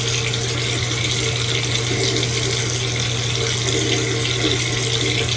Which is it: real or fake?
real